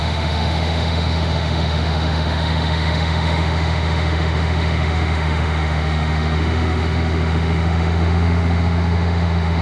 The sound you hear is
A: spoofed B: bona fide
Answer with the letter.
A